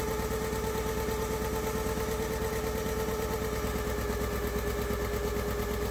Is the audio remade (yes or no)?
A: no